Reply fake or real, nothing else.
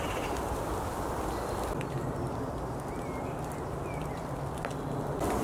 real